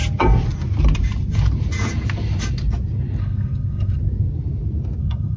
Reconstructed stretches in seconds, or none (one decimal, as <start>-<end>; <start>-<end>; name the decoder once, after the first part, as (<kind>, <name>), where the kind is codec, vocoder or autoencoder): 3.2-4.0 (codec, SNAC); 5.0-5.4